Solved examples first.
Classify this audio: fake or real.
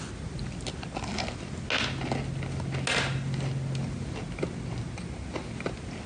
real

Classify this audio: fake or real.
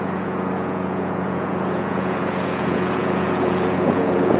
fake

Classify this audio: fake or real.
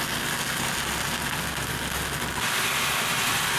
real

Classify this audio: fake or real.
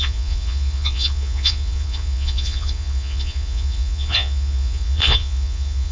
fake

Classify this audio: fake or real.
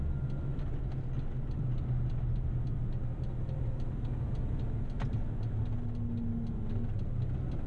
real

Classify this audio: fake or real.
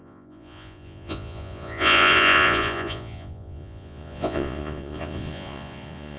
fake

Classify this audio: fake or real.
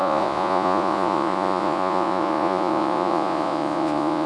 fake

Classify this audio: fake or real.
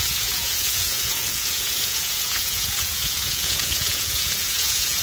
fake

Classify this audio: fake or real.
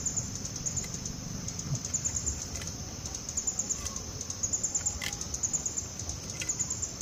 real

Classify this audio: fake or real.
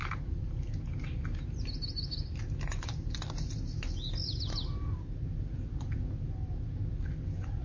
real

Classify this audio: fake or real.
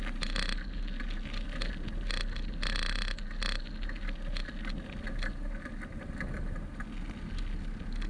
real